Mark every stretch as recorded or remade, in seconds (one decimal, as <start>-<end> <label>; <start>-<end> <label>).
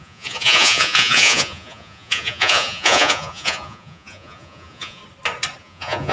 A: 0.0-5.0 remade; 5.0-5.6 recorded; 5.6-6.1 remade